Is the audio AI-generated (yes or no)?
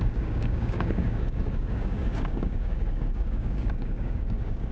yes